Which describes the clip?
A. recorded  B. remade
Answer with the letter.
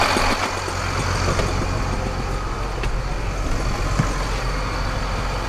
A